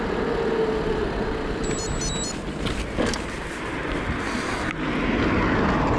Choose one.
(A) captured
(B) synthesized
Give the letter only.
A